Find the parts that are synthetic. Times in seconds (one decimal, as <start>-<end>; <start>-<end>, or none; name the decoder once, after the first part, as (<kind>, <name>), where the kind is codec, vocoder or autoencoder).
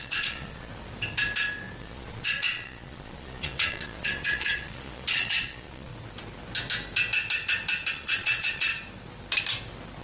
0.0-0.7 (vocoder, Vocos); 1.8-5.9; 7.9-8.7